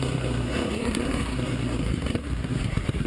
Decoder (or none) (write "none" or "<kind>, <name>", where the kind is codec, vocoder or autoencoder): codec, SNAC